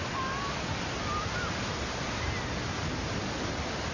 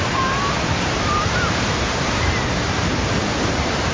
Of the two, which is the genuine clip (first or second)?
first